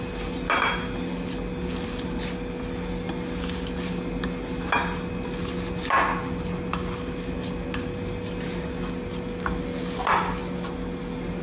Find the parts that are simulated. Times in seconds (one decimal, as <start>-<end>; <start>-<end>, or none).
none